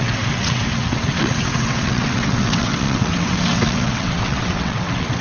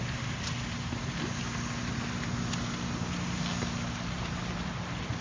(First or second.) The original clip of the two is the second